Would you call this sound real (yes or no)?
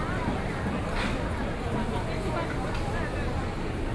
yes